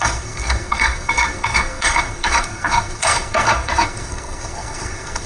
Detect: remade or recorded remade